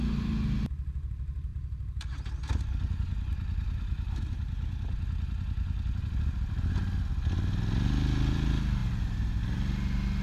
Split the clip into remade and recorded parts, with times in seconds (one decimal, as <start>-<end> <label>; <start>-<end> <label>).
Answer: 0.0-1.5 recorded; 1.5-2.1 remade; 2.1-8.8 recorded; 8.8-9.4 remade; 9.4-10.2 recorded